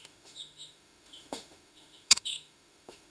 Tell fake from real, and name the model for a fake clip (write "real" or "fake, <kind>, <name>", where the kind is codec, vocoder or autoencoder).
fake, autoencoder, DAC-VAE